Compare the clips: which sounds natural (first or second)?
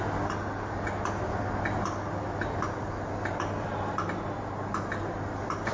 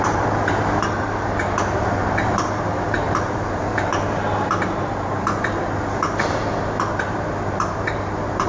first